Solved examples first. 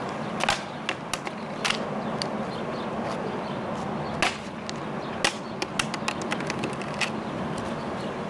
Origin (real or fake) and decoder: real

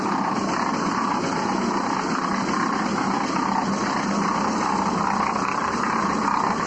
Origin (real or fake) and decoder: real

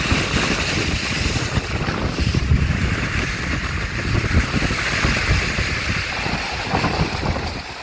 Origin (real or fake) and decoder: real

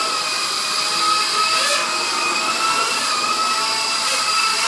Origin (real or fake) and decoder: real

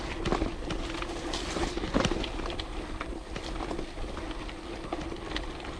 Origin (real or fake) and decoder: real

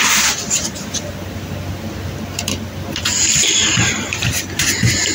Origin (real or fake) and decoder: real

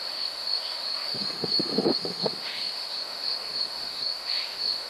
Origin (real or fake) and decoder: fake, autoencoder, DAC-VAE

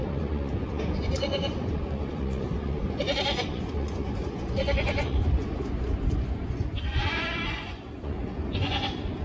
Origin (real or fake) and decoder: fake, vocoder, Vocos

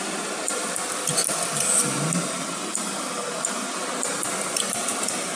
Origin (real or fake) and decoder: real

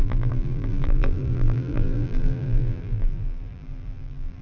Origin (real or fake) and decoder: fake, vocoder, BigVGAN v2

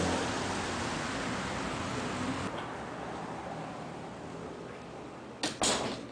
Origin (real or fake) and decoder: real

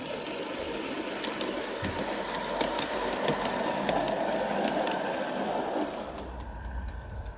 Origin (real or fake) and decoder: real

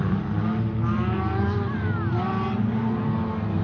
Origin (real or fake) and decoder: real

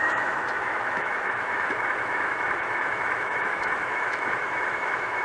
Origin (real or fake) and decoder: fake, autoencoder, DAC-VAE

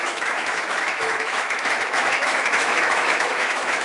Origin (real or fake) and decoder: fake, autoencoder, DAC-VAE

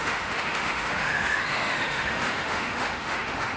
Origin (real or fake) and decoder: fake, autoencoder, DAC-VAE